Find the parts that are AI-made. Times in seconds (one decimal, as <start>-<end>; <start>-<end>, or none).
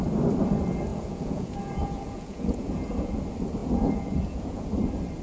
0.9-3.2; 3.6-4.7